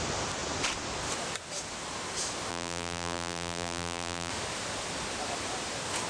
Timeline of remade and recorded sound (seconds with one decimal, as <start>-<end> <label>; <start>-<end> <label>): 0.0-2.5 recorded; 2.5-4.3 remade; 4.3-6.1 recorded